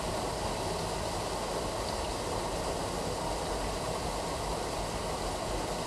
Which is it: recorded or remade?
recorded